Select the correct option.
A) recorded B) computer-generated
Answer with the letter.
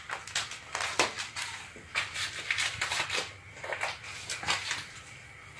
A